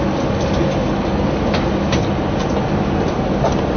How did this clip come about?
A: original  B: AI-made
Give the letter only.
A